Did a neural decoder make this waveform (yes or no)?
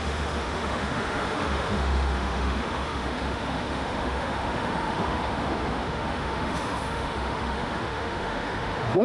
yes